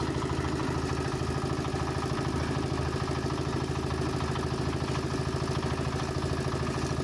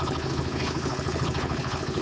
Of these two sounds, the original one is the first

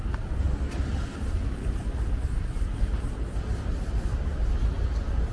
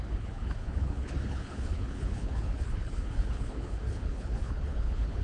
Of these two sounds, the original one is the first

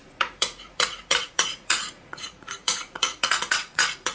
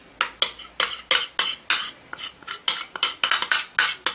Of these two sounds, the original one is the second